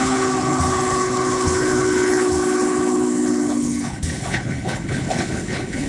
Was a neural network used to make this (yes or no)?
yes